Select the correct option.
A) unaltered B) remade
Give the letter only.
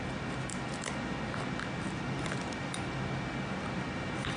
A